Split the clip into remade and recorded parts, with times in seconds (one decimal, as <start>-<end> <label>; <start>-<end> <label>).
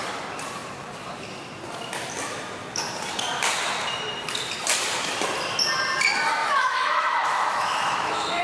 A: 0.0-6.4 recorded; 6.4-8.4 remade